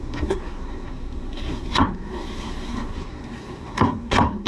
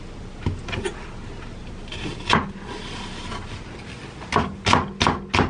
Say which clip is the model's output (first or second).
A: first